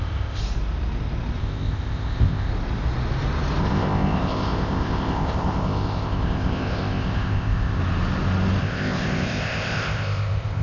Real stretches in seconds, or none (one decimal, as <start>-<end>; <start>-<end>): 0.4-1.4; 2.5-3.6; 7.8-8.6